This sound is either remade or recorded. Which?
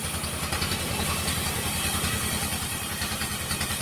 remade